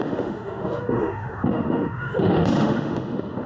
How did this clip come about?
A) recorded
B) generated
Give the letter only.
B